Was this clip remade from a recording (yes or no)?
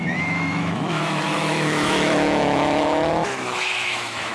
yes